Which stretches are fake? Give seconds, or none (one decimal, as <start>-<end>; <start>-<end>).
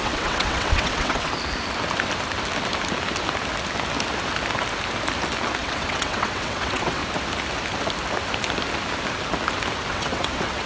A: 0.0-1.3; 5.6-7.0; 9.9-10.7